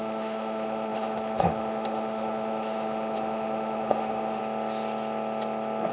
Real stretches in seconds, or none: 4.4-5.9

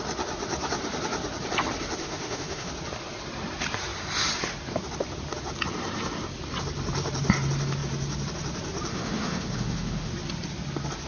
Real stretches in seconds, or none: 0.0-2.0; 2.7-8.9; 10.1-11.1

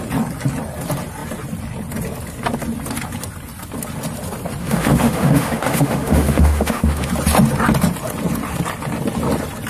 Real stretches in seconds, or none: 0.0-4.6; 7.1-9.7

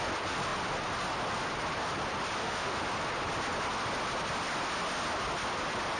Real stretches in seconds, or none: 0.0-2.4; 2.9-6.0